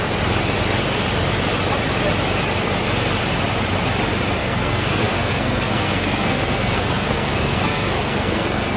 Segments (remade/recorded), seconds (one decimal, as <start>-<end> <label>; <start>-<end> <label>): 0.0-4.4 recorded; 4.4-8.8 remade